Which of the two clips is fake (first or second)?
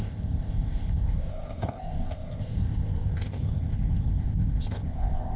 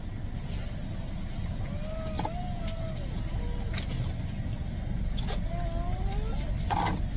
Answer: first